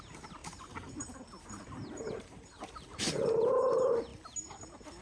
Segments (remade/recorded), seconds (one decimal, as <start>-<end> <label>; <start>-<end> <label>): 0.0-0.4 recorded; 0.4-3.4 remade; 3.4-5.0 recorded